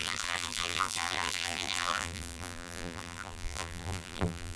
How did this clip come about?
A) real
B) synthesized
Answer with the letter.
B